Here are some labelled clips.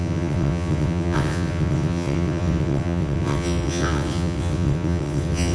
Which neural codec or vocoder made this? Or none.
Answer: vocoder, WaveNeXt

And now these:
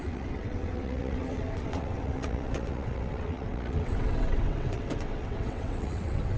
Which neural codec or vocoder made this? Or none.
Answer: vocoder, WaveNeXt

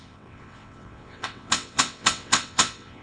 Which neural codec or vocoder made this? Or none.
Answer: vocoder, WaveNeXt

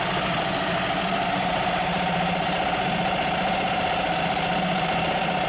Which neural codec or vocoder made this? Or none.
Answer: none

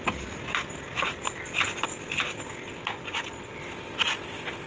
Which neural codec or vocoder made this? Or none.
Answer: none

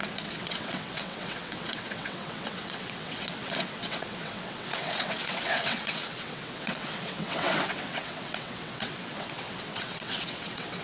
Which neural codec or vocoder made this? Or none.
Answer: vocoder, WaveNeXt